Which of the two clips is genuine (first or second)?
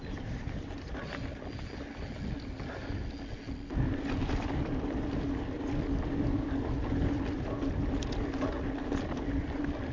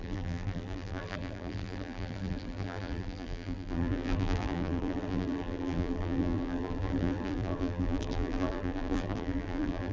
first